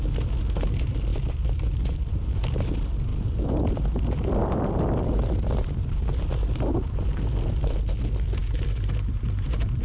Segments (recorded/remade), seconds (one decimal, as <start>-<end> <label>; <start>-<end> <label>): 0.0-1.1 recorded; 1.1-2.6 remade; 2.6-3.1 recorded; 3.1-7.2 remade; 7.2-9.8 recorded

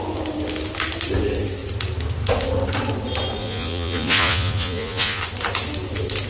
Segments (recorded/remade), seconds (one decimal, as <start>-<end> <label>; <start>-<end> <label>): 0.0-3.4 recorded; 3.4-5.2 remade; 5.2-6.3 recorded

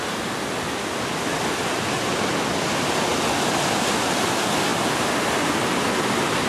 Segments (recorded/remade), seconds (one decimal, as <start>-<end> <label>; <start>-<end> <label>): 0.0-6.5 recorded